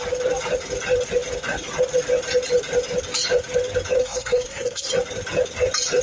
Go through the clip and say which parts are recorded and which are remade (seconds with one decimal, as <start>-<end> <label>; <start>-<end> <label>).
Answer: 0.0-4.0 recorded; 4.0-4.9 remade; 4.9-6.0 recorded